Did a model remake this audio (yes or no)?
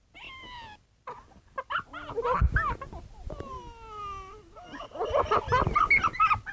no